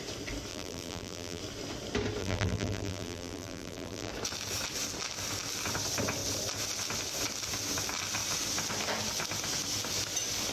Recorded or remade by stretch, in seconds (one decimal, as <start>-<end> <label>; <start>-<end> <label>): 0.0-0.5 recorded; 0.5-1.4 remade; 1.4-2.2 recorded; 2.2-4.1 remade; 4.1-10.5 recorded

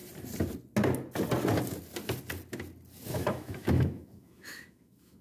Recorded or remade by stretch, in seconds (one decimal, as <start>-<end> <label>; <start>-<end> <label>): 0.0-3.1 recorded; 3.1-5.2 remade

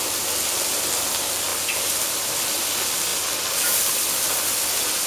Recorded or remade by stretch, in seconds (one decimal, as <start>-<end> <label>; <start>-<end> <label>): 0.0-1.5 recorded; 1.5-2.7 remade; 2.7-5.1 recorded

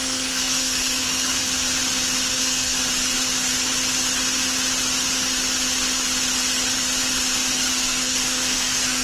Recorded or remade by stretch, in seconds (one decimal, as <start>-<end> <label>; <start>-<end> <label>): 0.0-1.4 remade; 1.4-2.3 recorded; 2.3-2.8 remade; 2.8-7.5 recorded; 7.5-9.0 remade

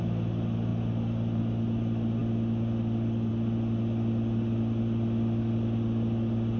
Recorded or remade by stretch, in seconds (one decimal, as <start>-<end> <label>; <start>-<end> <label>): 0.0-6.6 recorded

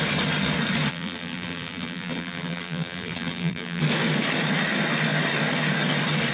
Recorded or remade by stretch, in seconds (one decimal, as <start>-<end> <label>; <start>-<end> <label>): 0.0-0.9 recorded; 0.9-3.8 remade; 3.8-6.3 recorded